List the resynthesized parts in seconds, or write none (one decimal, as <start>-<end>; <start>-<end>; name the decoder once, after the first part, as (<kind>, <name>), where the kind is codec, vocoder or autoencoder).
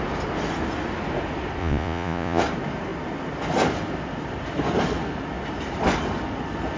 1.6-2.4 (vocoder, Vocos)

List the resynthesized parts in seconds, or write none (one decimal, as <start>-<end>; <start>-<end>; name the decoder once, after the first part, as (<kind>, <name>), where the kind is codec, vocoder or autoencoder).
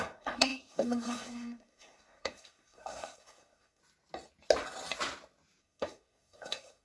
0.0-3.8 (codec, SNAC); 5.6-6.8